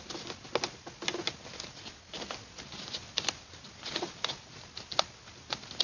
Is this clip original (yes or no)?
yes